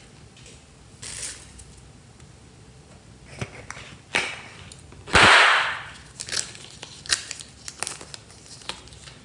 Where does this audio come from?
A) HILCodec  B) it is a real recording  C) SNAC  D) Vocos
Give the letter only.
B